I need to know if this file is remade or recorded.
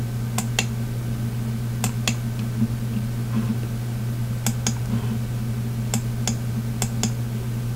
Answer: recorded